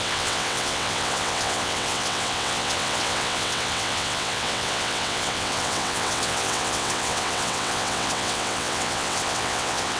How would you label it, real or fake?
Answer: fake